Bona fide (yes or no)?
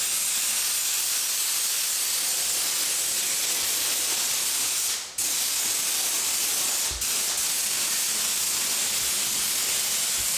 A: yes